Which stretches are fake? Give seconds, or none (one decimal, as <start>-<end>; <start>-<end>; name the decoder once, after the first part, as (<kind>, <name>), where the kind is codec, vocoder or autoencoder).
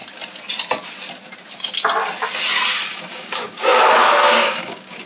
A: 3.1-5.1 (codec, DAC)